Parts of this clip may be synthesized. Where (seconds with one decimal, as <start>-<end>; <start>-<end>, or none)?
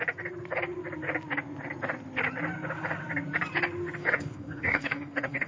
4.0-5.5